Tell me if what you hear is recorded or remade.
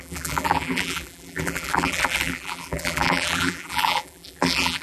remade